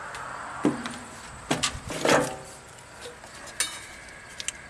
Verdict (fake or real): real